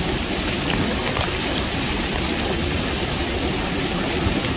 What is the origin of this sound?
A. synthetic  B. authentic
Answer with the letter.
B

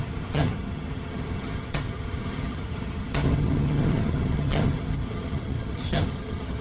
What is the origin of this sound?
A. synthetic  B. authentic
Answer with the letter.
A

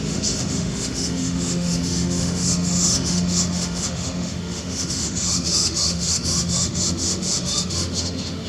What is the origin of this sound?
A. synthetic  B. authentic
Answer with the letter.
A